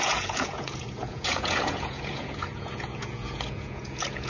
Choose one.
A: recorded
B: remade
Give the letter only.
B